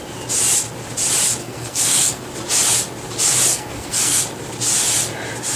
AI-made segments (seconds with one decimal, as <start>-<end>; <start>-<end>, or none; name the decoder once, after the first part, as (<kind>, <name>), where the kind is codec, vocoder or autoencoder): 1.4-2.2 (codec, SNAC); 3.5-4.2